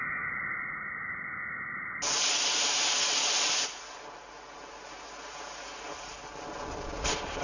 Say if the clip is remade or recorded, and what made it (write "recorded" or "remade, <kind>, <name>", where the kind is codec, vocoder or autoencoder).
recorded